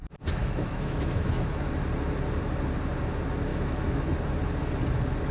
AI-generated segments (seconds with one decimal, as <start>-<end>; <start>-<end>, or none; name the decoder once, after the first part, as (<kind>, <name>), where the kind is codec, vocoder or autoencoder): 0.4-1.6 (autoencoder, DAC-VAE); 3.5-4.1